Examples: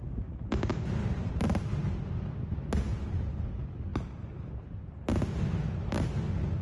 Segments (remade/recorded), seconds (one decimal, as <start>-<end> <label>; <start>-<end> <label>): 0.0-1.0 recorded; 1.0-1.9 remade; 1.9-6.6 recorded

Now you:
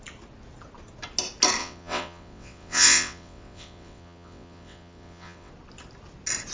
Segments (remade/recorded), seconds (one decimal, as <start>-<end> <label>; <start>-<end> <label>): 0.0-1.6 recorded; 1.6-5.5 remade; 5.5-6.5 recorded

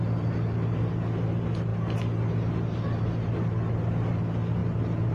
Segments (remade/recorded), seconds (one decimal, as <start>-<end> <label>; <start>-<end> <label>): 0.0-5.1 recorded